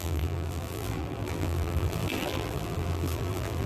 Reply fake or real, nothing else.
fake